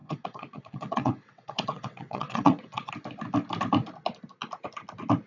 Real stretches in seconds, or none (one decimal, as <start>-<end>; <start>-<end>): 2.9-5.3

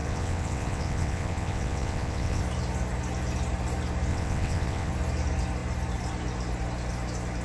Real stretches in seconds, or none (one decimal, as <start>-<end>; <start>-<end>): 2.4-4.1; 4.9-7.4

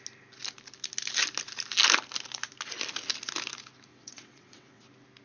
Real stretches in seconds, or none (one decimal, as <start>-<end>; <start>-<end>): 0.0-3.9; 4.8-5.2

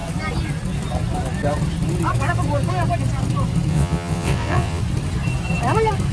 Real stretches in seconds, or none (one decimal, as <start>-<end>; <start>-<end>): 0.0-3.7; 4.8-6.1

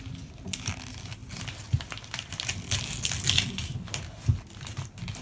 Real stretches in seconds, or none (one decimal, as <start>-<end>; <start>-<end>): 0.0-5.2

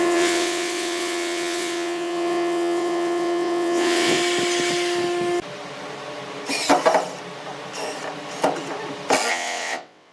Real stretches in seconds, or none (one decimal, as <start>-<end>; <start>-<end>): 4.2-9.3